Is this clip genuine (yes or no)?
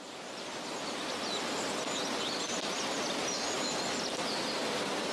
yes